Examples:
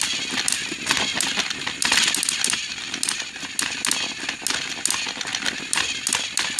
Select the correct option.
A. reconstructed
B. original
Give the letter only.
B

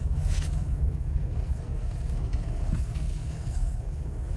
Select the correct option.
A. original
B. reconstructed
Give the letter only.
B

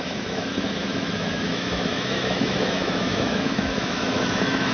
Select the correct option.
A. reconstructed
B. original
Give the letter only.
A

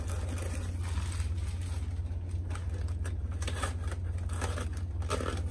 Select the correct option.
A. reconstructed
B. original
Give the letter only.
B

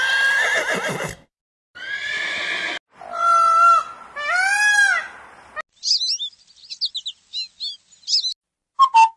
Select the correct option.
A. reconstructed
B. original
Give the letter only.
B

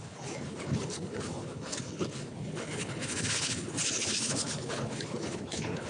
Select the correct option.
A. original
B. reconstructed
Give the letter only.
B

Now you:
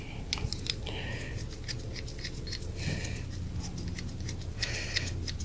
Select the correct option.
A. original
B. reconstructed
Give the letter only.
A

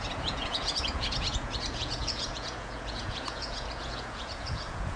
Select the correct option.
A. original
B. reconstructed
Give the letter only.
B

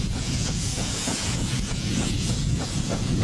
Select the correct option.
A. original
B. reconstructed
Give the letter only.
B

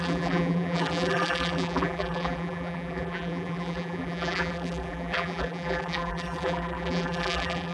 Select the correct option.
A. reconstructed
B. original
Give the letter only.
A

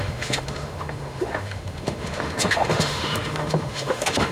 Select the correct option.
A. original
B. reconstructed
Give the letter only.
B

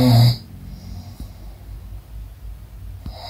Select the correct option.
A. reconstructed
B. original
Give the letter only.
B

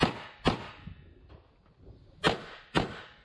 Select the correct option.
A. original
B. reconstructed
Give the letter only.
A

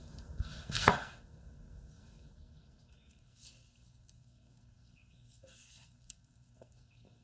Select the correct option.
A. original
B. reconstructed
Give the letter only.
B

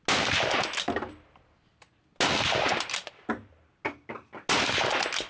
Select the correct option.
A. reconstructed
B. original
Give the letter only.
B